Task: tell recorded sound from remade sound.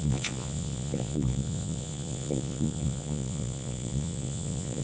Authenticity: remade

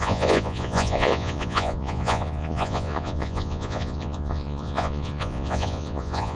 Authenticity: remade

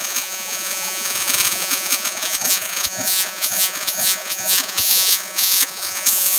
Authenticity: remade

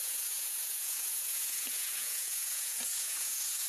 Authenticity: remade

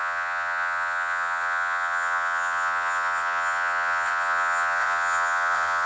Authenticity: remade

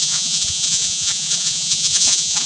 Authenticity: remade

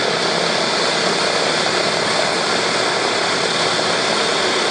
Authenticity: recorded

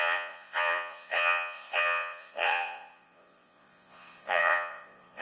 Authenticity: remade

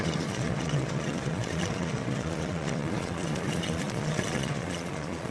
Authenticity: remade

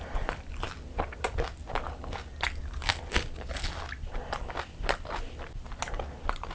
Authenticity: recorded